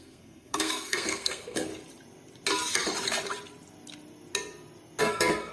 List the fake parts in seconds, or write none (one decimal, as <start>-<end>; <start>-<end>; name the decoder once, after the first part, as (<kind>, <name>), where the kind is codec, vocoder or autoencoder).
0.0-1.7 (codec, SNAC); 5.0-5.5